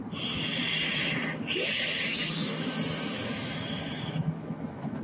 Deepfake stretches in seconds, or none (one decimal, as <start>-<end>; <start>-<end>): 0.8-1.5; 2.1-5.0